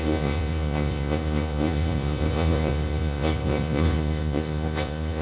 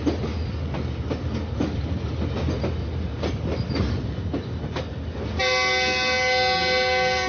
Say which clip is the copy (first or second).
first